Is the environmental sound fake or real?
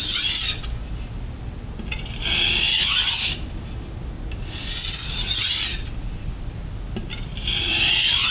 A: real